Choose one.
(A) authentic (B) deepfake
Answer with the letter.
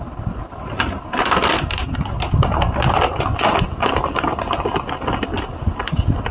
A